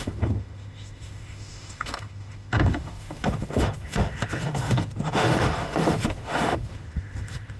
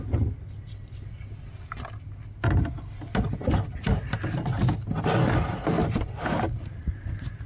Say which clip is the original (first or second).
second